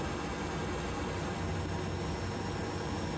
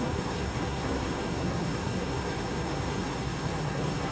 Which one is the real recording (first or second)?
first